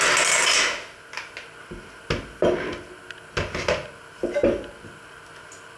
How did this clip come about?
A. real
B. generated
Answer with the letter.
A